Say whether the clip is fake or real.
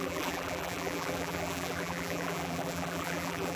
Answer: fake